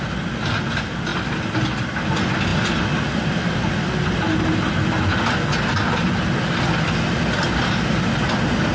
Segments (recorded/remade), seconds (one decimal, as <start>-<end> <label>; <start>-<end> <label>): 0.0-8.7 recorded